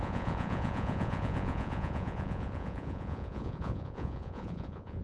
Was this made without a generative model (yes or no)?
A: no